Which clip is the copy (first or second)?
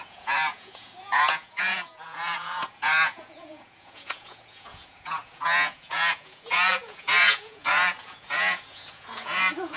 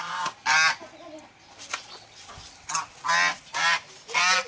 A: first